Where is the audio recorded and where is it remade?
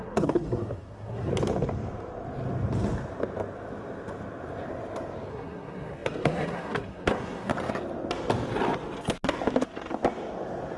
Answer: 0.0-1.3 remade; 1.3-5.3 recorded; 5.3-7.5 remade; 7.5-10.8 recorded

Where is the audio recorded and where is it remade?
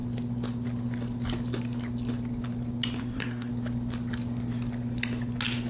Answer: 0.0-3.0 recorded; 3.0-3.5 remade; 3.5-5.7 recorded